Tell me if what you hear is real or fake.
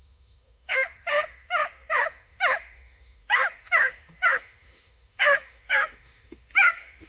fake